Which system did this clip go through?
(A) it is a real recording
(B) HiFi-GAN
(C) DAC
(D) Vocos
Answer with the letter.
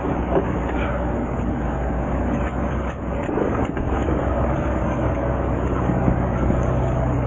C